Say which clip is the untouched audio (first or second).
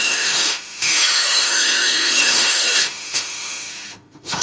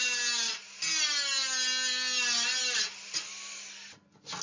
second